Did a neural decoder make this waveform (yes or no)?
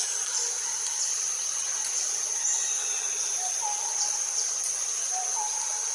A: no